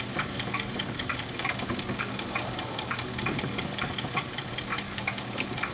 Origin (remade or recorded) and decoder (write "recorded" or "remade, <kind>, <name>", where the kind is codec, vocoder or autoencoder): remade, codec, DAC